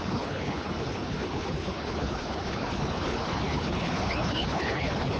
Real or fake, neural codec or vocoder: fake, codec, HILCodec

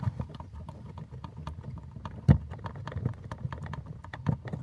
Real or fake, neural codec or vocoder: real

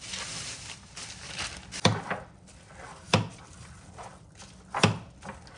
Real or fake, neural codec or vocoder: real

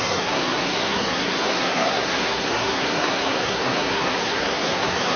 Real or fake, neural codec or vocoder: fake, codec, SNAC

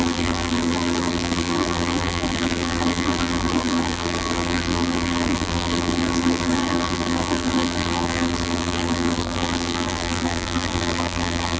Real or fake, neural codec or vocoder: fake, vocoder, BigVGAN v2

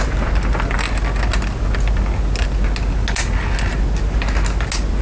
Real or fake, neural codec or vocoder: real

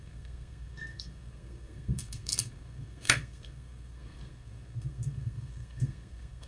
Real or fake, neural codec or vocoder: fake, codec, SNAC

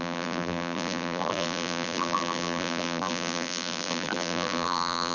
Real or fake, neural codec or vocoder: fake, vocoder, BigVGAN v2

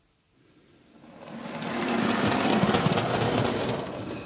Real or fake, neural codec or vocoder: real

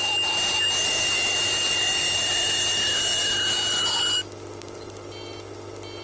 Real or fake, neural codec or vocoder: real